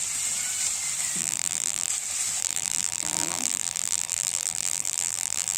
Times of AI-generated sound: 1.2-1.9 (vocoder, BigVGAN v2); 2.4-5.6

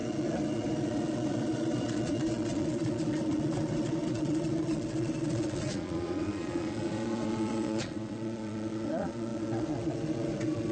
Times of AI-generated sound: 0.0-10.7 (vocoder, Vocos)